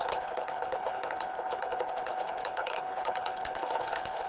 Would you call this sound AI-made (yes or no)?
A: yes